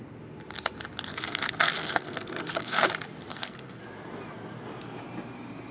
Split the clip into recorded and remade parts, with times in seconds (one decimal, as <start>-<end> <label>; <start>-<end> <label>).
0.0-1.1 recorded; 1.1-2.9 remade; 2.9-3.3 recorded; 3.3-3.8 remade; 3.8-5.7 recorded